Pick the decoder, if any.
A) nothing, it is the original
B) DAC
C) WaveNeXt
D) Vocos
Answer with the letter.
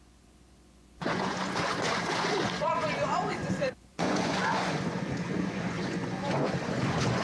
D